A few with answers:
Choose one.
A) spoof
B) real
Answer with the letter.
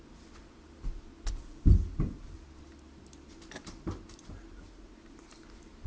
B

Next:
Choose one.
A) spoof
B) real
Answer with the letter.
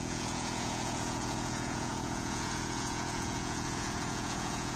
A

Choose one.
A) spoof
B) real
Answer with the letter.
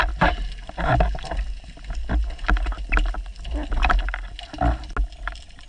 B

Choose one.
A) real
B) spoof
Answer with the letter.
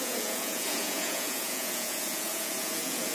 B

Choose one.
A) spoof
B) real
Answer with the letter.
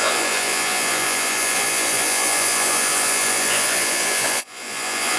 A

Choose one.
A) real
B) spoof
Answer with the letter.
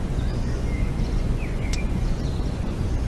B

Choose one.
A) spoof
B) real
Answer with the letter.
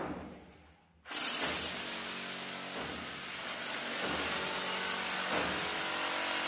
B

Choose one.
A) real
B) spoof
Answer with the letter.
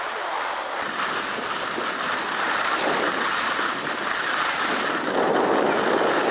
A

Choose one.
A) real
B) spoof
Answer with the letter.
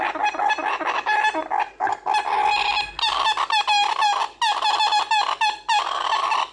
A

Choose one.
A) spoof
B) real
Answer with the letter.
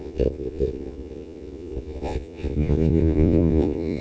A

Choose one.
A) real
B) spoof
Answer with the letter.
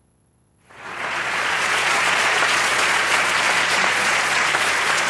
B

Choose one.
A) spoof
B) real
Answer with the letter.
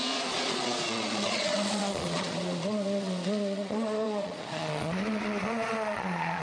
A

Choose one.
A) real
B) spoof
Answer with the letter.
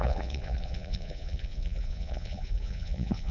B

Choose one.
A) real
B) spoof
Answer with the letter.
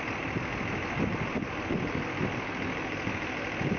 A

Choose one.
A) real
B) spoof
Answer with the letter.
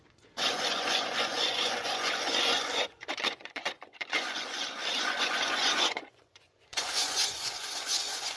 B